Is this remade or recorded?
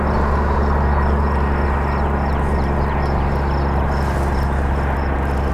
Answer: recorded